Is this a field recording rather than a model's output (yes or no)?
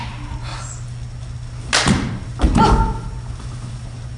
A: yes